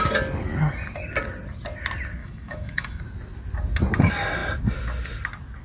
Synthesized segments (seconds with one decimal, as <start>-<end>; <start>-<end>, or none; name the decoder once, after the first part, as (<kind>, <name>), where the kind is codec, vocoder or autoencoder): 2.2-3.0 (autoencoder, DAC-VAE)